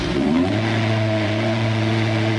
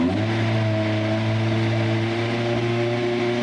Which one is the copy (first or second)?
first